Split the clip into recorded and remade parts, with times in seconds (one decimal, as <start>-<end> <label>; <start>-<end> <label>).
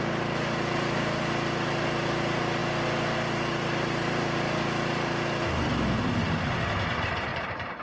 0.0-7.3 recorded; 7.3-7.8 remade